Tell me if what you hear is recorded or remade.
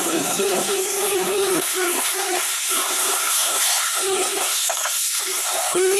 remade